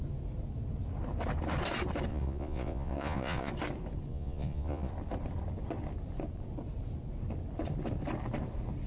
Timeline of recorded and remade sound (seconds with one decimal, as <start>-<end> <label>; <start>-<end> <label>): 0.0-2.1 recorded; 2.1-3.5 remade; 3.5-4.1 recorded; 4.1-4.9 remade; 4.9-8.9 recorded